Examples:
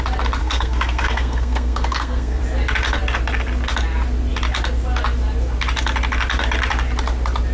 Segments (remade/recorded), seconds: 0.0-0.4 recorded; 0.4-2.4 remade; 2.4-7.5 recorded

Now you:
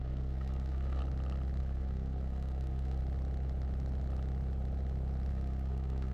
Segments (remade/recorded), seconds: 0.0-1.0 remade; 1.0-1.6 recorded; 1.6-3.0 remade; 3.0-5.3 recorded; 5.3-6.1 remade

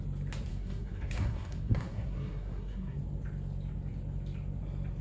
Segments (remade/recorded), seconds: 0.0-0.5 recorded; 0.5-3.0 remade; 3.0-5.0 recorded

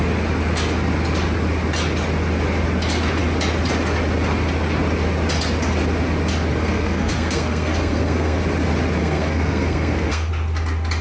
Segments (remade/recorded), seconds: 0.0-6.5 recorded; 6.5-8.4 remade; 8.4-9.0 recorded; 9.0-10.3 remade; 10.3-11.0 recorded